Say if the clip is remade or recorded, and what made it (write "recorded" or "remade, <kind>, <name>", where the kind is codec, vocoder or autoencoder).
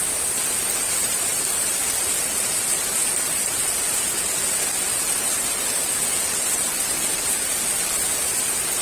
recorded